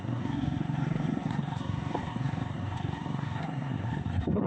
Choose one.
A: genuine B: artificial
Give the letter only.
B